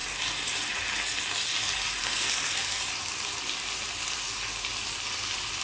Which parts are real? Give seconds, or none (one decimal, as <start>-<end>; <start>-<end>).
0.0-2.0; 2.8-5.6